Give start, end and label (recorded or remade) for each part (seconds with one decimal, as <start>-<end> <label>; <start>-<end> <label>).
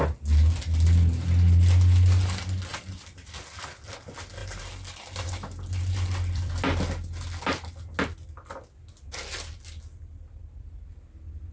0.0-2.7 recorded; 2.7-3.4 remade; 3.4-4.4 recorded; 4.4-6.5 remade; 6.5-11.5 recorded